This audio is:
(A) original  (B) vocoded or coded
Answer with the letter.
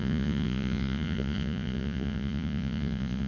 B